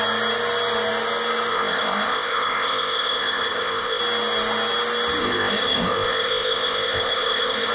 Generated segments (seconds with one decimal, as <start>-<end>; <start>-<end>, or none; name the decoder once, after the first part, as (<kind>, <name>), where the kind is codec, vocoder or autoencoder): 1.5-4.0 (codec, ZipCodec); 5.2-7.7